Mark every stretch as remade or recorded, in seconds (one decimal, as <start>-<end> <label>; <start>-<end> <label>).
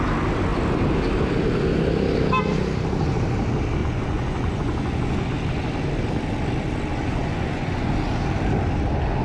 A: 0.0-3.8 recorded; 3.8-5.2 remade; 5.2-7.0 recorded; 7.0-7.9 remade; 7.9-9.2 recorded